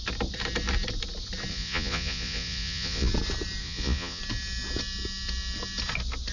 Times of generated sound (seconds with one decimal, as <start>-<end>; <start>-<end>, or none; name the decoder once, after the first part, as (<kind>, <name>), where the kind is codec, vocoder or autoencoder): 1.5-3.1 (vocoder, Vocos); 3.6-4.2